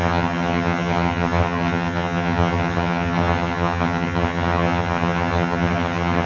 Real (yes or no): no